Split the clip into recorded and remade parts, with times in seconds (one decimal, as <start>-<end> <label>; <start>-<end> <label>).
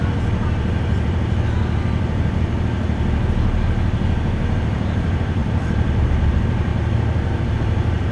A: 0.0-4.6 recorded; 4.6-6.7 remade; 6.7-7.5 recorded; 7.5-8.1 remade